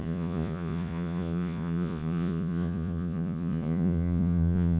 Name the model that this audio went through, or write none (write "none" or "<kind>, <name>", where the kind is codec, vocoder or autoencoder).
vocoder, Vocos